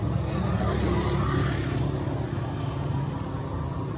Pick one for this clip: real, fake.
real